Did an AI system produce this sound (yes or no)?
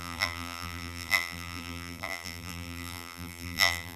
yes